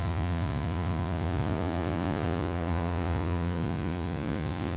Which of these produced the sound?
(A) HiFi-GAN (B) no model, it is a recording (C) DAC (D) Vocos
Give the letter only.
D